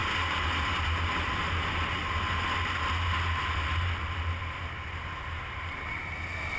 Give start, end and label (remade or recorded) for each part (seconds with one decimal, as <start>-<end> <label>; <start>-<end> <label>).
0.0-6.6 recorded